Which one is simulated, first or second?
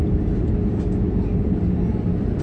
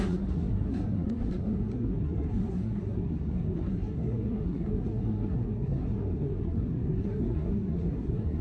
second